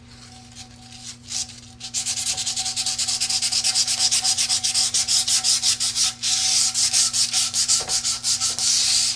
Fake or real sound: real